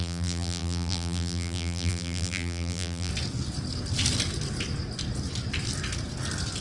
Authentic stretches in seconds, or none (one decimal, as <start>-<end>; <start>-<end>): 3.1-6.6

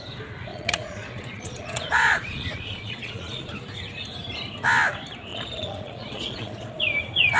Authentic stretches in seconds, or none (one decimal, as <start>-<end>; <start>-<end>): 0.0-0.5; 3.5-5.3; 6.8-7.4

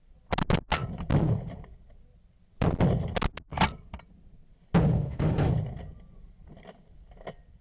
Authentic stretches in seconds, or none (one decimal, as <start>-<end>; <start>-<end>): 0.0-4.8; 5.5-7.6